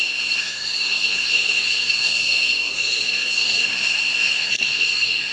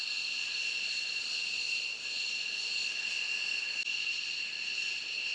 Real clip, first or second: second